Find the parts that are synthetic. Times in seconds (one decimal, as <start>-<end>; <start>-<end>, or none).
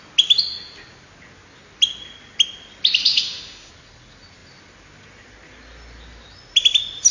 3.0-3.7